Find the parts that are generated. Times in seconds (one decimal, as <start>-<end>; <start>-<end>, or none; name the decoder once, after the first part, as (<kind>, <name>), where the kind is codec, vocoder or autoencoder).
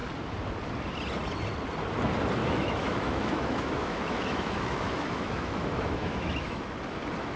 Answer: 2.4-6.6 (autoencoder, DAC-VAE)